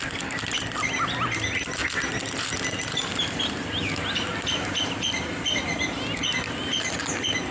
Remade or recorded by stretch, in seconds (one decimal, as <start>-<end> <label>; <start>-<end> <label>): 0.0-7.5 recorded